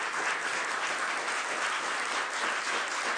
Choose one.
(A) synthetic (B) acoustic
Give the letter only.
B